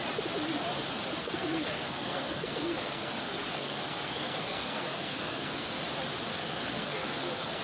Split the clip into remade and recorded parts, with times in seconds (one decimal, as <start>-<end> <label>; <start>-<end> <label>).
0.0-1.2 recorded; 1.2-5.8 remade; 5.8-6.3 recorded; 6.3-7.6 remade